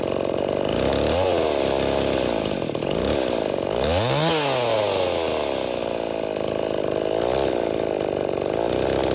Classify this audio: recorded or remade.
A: recorded